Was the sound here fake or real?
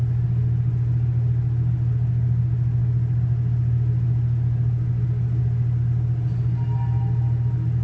real